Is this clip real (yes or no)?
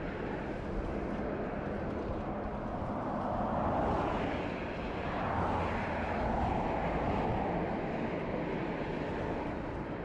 yes